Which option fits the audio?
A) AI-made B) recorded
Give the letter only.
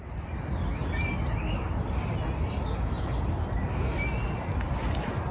B